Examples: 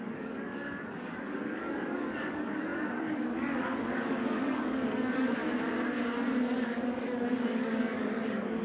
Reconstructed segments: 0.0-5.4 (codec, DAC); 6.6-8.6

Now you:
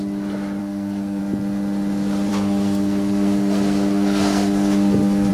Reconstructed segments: 0.6-1.2 (codec, SNAC); 2.3-5.3

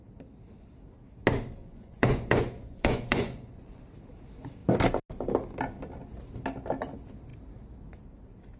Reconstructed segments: 1.6-3.8 (vocoder, Vocos)